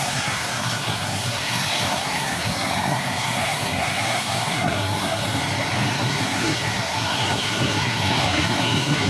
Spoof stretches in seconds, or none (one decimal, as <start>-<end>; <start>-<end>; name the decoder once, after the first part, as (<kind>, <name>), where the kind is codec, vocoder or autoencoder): 0.0-5.2 (codec, SNAC); 5.9-9.1